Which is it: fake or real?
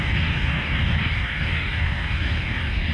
fake